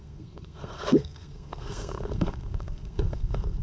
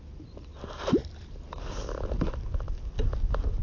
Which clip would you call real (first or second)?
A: second